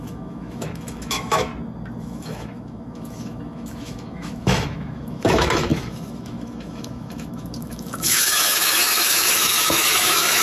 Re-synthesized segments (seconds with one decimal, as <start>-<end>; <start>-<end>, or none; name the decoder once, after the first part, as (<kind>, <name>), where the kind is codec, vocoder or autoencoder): 0.0-1.5 (autoencoder, DAC-VAE); 2.0-10.4